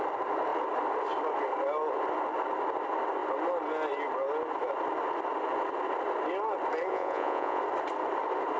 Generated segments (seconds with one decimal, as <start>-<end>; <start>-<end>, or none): 6.9-7.6